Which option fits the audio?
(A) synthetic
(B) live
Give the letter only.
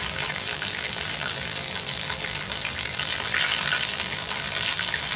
A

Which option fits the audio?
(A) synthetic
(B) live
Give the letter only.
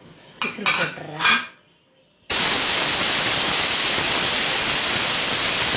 B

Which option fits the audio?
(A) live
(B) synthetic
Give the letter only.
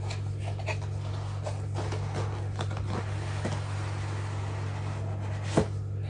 A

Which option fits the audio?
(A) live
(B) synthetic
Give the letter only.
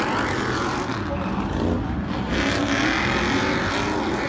A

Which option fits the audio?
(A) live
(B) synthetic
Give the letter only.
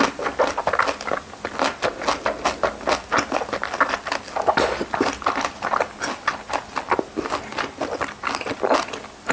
A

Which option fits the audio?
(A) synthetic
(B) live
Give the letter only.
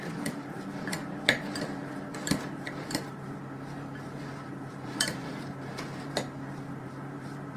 A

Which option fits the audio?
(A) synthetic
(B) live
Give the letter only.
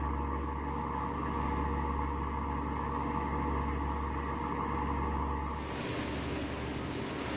B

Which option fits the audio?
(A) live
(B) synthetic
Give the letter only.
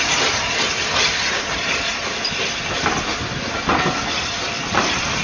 A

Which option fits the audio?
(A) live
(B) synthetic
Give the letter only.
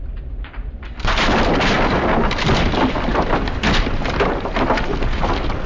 B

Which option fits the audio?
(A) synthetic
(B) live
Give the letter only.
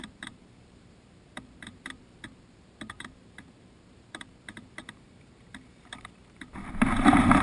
A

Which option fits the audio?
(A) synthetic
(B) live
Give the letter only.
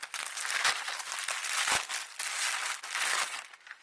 B